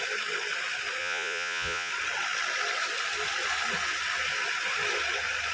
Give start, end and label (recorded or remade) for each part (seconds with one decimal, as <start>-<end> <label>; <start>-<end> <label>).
0.0-1.0 recorded; 1.0-1.9 remade; 1.9-5.5 recorded